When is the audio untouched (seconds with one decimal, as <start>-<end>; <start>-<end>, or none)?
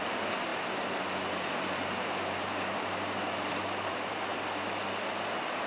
0.0-5.7